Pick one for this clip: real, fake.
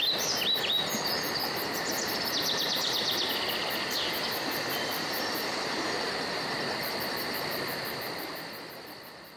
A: real